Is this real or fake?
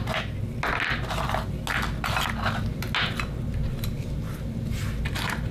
real